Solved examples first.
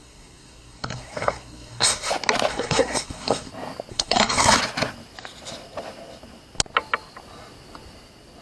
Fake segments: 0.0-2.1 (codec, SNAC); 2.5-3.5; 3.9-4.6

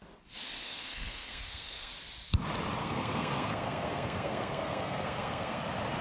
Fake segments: 0.6-1.9 (codec, SNAC); 2.8-5.6

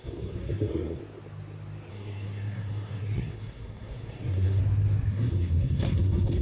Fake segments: 0.0-1.0 (codec, SNAC); 1.9-4.6; 5.1-6.4

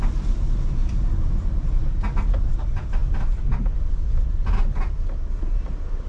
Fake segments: none